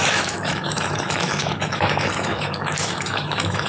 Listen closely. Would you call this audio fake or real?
fake